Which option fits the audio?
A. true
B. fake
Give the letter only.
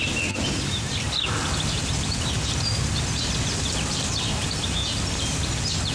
A